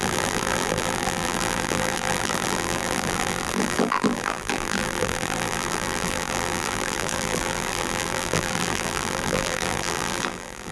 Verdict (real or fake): fake